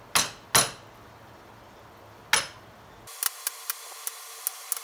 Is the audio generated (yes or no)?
no